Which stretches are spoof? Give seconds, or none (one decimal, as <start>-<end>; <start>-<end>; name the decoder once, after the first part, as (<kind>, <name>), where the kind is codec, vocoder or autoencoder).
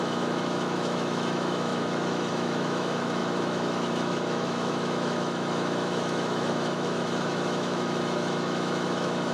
0.0-9.3 (autoencoder, DAC-VAE)